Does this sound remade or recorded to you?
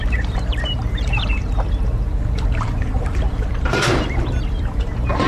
remade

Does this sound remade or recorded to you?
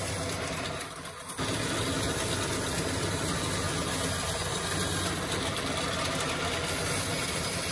recorded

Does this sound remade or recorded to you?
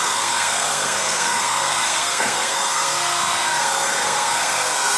remade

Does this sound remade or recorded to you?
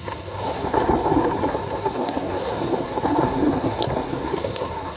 remade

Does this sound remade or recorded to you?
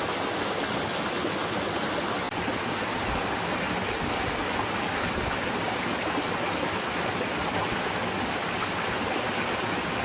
recorded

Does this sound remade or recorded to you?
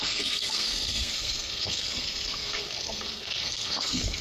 remade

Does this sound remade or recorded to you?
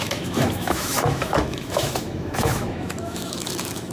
remade